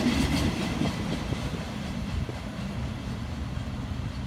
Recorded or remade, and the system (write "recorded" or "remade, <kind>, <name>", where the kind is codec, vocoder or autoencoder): recorded